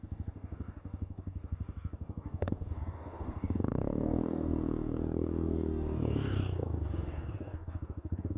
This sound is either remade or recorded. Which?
remade